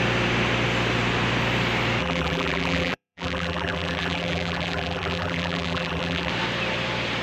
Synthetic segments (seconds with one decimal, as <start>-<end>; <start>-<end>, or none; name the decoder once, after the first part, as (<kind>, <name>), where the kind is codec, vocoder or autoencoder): 2.0-6.3 (vocoder, BigVGAN v2)